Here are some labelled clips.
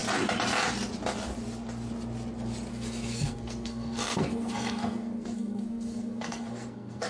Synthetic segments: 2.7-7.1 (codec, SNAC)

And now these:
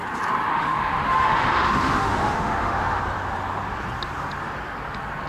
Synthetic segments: 0.5-3.0 (autoencoder, DAC-VAE)

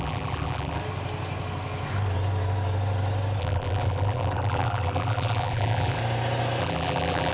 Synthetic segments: 0.0-0.8 (vocoder, BigVGAN v2); 3.4-6.0; 6.6-7.3

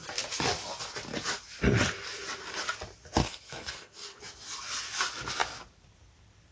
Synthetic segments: 3.2-4.2 (codec, SNAC)

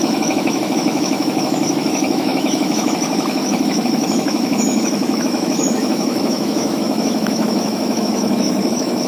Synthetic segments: 0.0-9.1 (autoencoder, DAC-VAE)